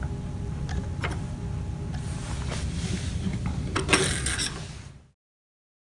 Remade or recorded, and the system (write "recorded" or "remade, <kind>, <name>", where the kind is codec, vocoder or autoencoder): recorded